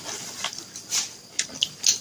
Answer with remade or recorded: recorded